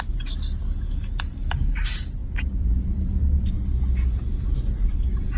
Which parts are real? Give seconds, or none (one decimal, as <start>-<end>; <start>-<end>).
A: 0.0-5.4